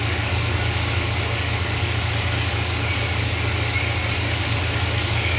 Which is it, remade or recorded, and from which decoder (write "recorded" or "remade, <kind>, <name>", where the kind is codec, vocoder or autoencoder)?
remade, codec, DAC